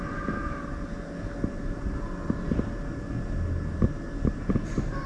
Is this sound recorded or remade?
recorded